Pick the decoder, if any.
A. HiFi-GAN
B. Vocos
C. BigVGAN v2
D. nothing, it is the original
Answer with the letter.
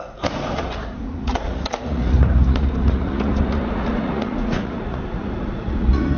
B